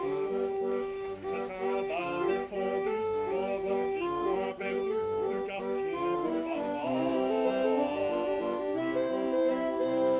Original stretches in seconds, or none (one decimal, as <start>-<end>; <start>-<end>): 7.1-9.5